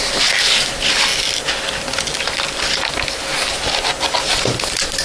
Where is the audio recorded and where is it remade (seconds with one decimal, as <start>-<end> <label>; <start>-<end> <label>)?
0.0-1.1 recorded; 1.1-4.1 remade; 4.1-5.0 recorded